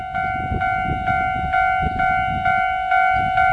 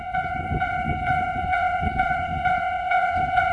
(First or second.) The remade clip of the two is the second